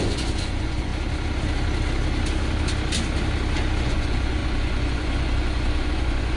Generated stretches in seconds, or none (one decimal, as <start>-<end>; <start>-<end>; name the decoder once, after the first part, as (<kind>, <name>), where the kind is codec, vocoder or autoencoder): 0.0-0.9 (vocoder, Vocos); 3.8-6.4